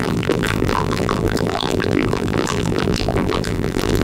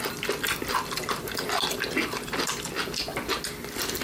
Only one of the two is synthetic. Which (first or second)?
first